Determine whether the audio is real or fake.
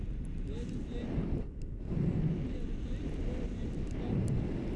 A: real